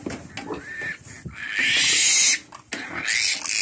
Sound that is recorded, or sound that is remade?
recorded